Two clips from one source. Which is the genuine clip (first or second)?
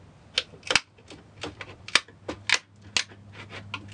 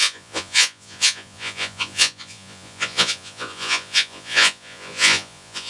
first